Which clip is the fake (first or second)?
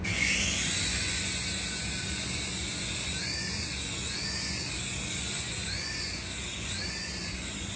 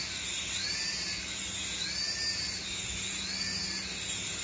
first